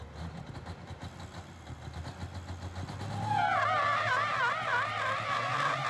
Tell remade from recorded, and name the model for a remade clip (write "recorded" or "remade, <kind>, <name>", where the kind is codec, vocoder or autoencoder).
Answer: recorded